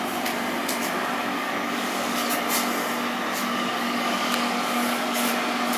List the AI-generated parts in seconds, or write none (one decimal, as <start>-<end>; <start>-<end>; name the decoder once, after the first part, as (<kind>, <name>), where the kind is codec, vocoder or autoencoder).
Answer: 0.8-2.3 (codec, DAC); 3.4-5.3

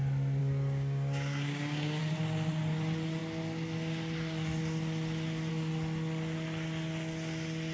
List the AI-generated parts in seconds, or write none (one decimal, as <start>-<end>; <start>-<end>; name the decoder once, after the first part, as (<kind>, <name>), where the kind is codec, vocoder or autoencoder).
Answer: 0.4-2.0 (codec, DAC)

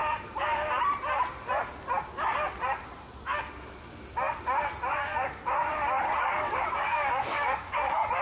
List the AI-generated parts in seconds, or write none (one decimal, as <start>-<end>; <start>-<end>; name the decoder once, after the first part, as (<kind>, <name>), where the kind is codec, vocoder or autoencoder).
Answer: 4.9-5.7 (codec, DAC); 6.2-8.2

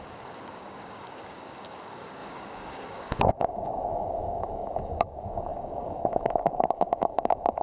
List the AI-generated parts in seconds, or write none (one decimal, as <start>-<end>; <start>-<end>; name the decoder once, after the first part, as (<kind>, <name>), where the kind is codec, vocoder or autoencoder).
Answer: 0.0-7.6 (codec, DAC)

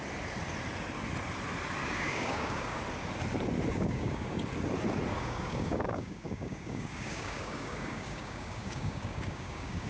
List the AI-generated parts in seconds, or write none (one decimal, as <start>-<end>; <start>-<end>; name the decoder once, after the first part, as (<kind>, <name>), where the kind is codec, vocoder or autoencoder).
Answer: 1.8-2.8 (codec, DAC); 3.7-4.4; 5.1-9.9

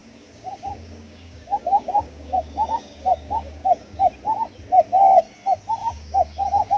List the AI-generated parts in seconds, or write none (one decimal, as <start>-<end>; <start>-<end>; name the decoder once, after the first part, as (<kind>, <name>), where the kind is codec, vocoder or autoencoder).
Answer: 0.0-4.1 (codec, DAC); 5.8-6.8

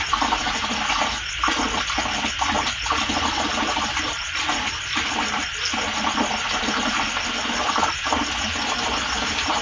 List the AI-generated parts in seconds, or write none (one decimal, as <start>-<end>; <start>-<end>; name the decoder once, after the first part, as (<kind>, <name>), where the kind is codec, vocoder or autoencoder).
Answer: none

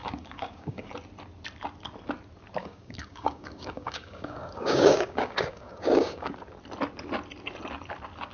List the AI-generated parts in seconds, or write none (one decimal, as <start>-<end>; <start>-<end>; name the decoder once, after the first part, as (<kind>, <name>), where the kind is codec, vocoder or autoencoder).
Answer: 0.0-0.9 (codec, DAC); 2.6-6.3